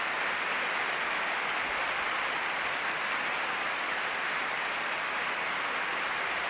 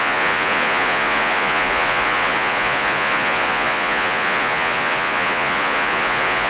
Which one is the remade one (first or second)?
second